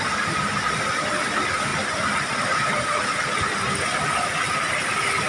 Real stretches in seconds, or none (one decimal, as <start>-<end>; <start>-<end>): 0.0-5.3